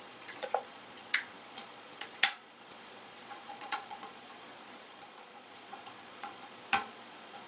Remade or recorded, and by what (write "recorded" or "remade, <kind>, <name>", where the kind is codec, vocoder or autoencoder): remade, vocoder, Vocos